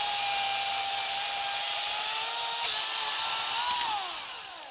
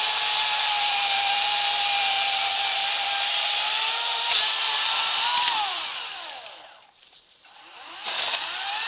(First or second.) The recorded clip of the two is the first